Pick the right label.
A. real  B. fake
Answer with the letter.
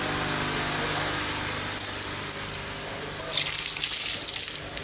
A